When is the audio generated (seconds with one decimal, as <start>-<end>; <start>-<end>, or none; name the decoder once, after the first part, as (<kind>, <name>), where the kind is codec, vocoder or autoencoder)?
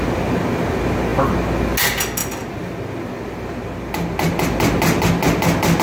none